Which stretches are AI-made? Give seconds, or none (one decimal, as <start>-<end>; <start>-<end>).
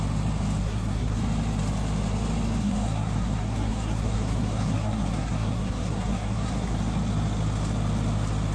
0.6-1.2; 2.6-6.8